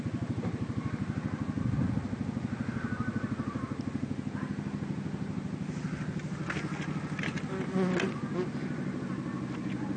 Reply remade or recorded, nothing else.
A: recorded